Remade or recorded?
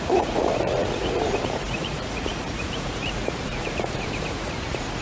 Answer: remade